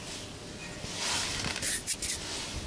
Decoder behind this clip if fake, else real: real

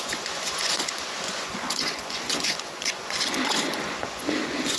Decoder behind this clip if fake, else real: fake, vocoder, Vocos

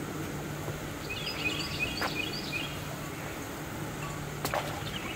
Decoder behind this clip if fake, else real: real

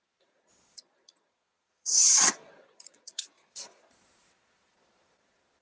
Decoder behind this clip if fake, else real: fake, vocoder, Vocos